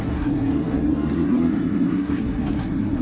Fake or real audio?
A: fake